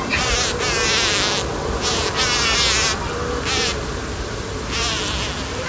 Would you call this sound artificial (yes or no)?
no